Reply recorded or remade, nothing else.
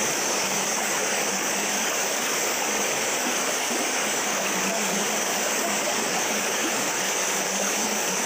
remade